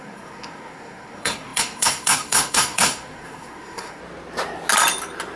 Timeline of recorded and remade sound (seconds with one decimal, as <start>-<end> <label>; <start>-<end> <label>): 0.0-4.0 remade; 4.0-5.4 recorded